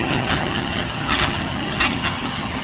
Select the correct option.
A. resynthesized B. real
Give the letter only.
A